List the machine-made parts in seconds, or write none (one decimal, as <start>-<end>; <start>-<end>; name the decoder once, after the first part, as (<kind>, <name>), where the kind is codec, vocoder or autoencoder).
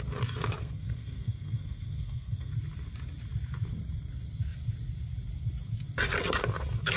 0.6-2.5 (codec, SNAC)